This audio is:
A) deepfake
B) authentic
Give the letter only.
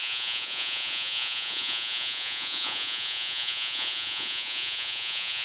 A